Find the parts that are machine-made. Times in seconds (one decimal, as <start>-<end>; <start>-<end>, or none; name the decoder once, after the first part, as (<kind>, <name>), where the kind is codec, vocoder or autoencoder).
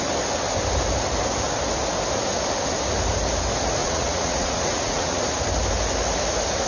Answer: 3.8-5.2 (vocoder, Vocos)